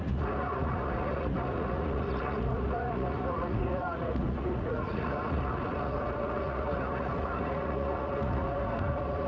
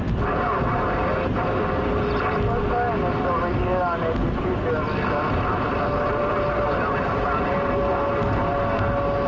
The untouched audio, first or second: second